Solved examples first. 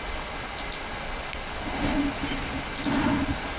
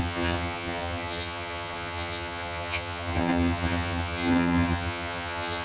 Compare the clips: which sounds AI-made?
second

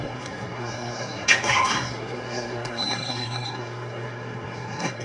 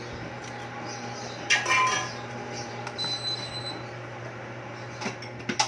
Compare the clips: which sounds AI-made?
first